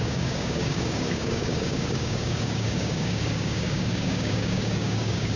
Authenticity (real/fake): fake